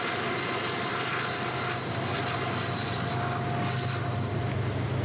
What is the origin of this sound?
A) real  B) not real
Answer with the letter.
A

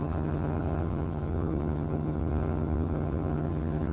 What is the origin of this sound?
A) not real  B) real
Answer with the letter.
A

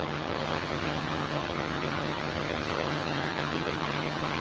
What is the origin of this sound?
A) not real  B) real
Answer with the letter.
A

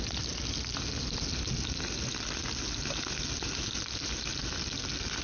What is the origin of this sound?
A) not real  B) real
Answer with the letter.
B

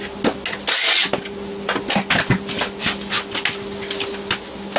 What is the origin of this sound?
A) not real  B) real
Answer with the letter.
B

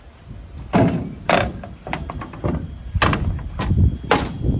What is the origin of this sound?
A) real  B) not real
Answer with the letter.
A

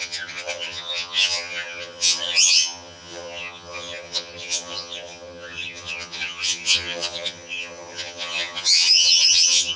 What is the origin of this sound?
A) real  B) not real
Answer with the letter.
B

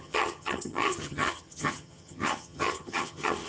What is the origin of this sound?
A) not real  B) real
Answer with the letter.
A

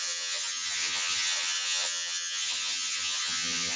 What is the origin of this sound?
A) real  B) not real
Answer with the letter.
B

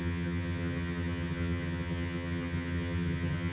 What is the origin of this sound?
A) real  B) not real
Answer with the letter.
B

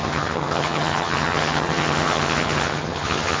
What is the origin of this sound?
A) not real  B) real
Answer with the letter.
A